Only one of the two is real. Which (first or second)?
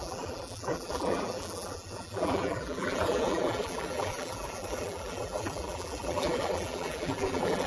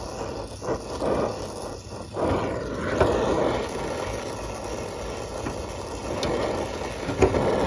second